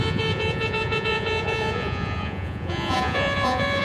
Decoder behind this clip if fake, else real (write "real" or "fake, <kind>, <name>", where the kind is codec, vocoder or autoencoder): fake, vocoder, Vocos